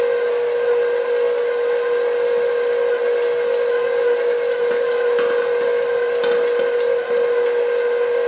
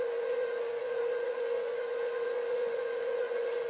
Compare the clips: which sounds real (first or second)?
first